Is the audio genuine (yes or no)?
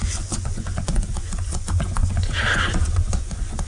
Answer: no